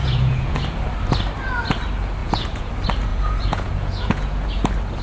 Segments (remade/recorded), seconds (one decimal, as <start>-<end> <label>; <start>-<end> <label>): 0.0-0.6 remade; 0.6-2.2 recorded; 2.2-2.7 remade; 2.7-3.1 recorded; 3.1-4.5 remade; 4.5-5.0 recorded